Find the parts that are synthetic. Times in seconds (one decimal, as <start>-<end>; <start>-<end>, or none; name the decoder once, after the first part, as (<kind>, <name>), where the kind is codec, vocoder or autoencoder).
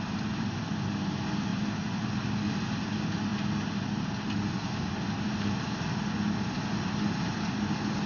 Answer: none